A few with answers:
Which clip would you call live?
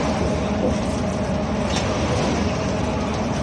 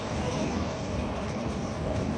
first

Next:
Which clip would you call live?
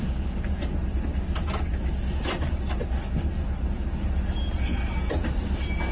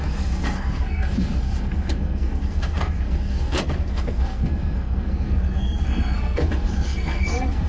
first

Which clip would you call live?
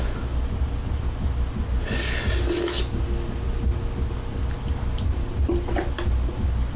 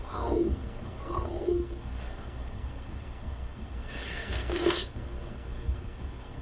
first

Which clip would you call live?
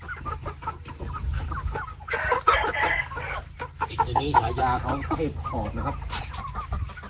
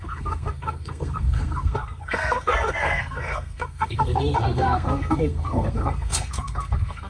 first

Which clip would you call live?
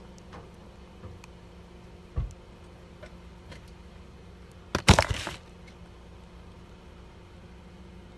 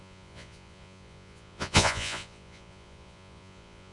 first